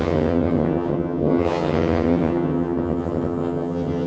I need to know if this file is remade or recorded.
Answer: remade